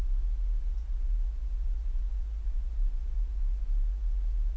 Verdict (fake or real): fake